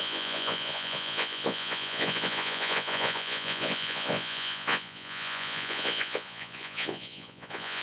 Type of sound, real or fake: fake